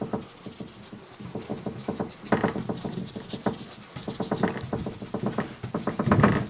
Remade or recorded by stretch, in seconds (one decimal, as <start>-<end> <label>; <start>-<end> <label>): 0.0-1.5 recorded; 1.5-2.0 remade; 2.0-6.5 recorded